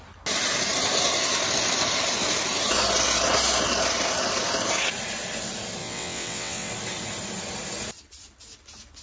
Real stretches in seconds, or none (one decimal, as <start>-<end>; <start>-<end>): 0.0-5.8; 6.7-9.0